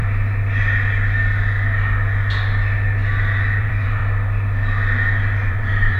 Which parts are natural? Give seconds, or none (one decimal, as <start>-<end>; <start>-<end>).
0.0-3.6; 4.0-5.5